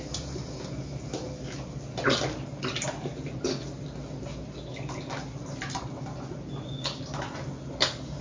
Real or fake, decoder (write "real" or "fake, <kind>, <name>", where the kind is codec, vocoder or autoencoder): real